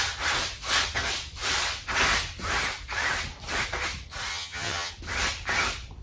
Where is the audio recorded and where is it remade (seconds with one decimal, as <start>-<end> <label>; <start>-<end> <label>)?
0.0-4.3 recorded; 4.3-4.9 remade; 4.9-6.0 recorded